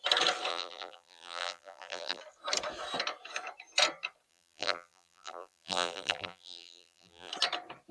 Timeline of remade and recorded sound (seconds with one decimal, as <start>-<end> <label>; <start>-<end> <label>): 0.0-0.5 recorded; 0.5-2.2 remade; 2.2-4.3 recorded; 4.3-7.3 remade; 7.3-7.9 recorded